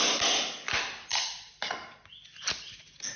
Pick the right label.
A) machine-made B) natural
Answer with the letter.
B